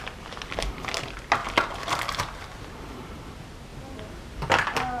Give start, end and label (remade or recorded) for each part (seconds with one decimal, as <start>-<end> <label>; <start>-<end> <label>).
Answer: 0.0-5.0 recorded